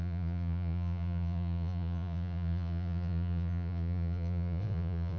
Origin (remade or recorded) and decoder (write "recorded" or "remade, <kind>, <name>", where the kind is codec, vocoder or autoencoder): remade, vocoder, Vocos